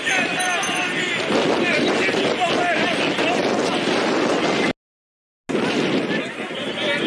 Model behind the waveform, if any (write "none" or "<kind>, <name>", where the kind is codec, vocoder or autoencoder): none